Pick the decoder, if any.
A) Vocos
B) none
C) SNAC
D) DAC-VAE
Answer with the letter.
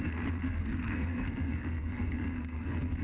C